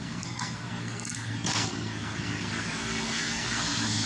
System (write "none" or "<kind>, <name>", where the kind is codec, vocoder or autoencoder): codec, SNAC